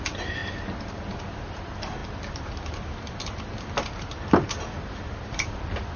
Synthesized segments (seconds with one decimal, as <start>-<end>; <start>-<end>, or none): 2.0-5.6